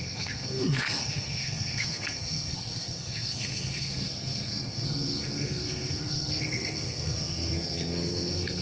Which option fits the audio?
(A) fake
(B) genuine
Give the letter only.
A